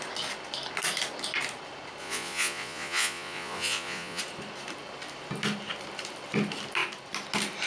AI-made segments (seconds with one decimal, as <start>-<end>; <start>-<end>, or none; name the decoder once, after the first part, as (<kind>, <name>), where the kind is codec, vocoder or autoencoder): 2.0-4.2 (vocoder, Vocos)